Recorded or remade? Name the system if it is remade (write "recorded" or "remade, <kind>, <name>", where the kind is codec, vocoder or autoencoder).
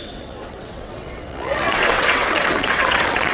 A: remade, vocoder, WaveNeXt